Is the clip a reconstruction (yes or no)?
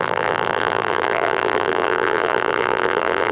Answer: yes